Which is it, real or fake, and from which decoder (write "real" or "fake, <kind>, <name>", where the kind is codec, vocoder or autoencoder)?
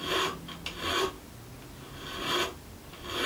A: real